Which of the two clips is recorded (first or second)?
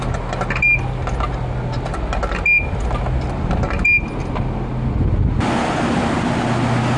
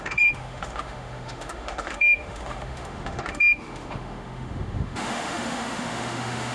first